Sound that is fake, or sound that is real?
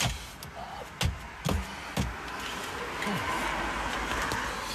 real